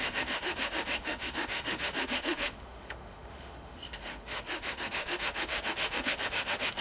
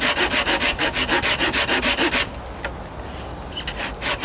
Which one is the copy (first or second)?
first